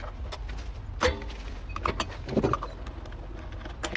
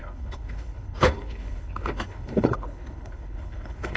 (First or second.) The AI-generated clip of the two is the second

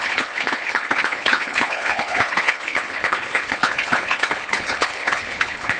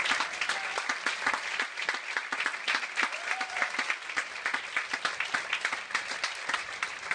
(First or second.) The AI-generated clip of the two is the first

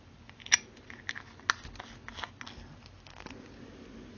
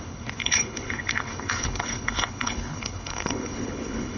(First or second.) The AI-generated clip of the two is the second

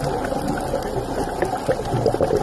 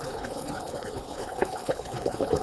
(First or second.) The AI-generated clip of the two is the second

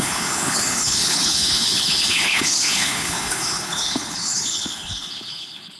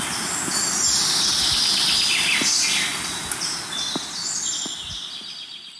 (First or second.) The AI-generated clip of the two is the first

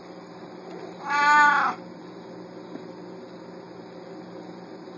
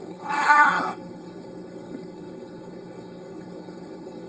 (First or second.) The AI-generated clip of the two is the second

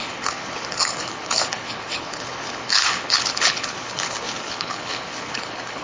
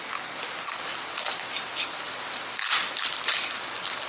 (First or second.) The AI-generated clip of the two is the first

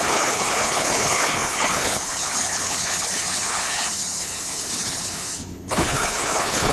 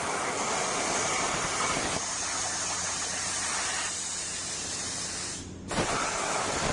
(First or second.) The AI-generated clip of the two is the first